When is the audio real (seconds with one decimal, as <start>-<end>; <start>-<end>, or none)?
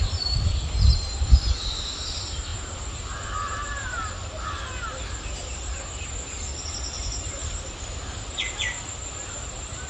0.0-9.9